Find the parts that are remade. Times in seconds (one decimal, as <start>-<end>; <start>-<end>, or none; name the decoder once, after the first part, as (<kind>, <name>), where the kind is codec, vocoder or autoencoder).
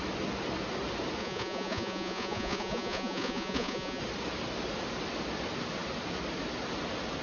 1.2-4.0 (vocoder, Vocos)